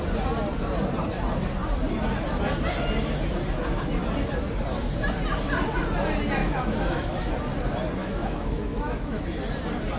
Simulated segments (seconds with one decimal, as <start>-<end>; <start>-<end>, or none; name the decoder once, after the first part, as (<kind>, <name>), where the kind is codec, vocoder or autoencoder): 6.4-7.3 (autoencoder, DAC-VAE); 8.0-9.2